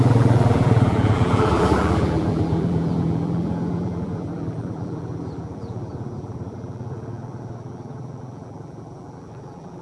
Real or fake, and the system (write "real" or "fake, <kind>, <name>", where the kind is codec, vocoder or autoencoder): fake, vocoder, BigVGAN v2